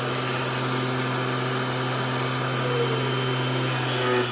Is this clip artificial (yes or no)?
no